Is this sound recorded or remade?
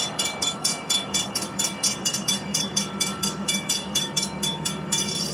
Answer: remade